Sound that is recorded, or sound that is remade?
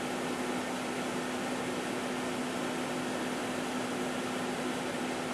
recorded